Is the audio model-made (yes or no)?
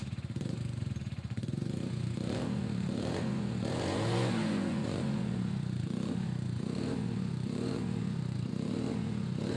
yes